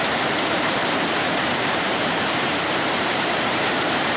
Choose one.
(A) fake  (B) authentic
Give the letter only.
A